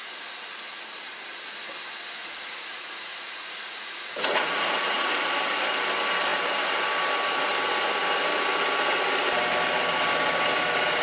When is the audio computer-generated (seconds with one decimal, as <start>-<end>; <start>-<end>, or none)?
2.2-5.3